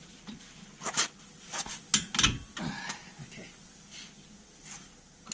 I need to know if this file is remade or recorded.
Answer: recorded